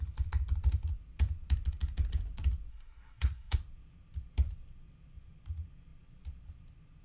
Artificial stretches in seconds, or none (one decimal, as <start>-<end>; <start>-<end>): 2.7-3.6